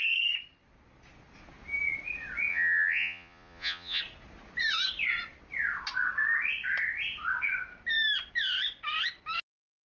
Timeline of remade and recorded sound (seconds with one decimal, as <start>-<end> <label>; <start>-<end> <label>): 0.0-2.5 recorded; 2.5-4.0 remade; 4.0-9.8 recorded